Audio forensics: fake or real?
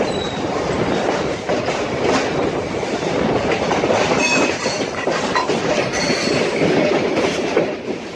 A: fake